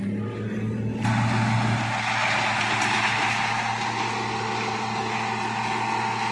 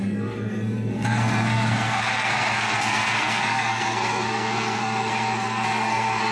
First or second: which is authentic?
first